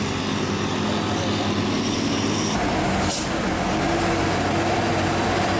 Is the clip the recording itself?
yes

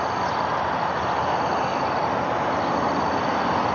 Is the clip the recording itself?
yes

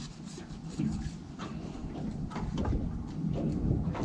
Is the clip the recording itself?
yes